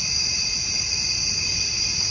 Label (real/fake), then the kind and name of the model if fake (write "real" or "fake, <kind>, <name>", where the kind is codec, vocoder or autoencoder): real